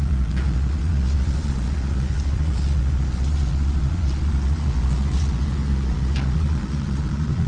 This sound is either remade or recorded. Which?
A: remade